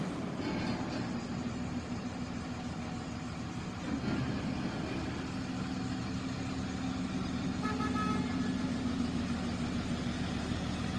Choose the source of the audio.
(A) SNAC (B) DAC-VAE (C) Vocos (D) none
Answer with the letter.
D